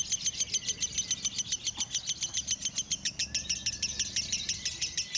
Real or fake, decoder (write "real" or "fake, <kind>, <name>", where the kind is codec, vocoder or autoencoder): real